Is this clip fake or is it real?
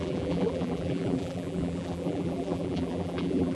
fake